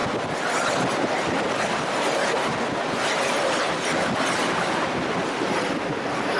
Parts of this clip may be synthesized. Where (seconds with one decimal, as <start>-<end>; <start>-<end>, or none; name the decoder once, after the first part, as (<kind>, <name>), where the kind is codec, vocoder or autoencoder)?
none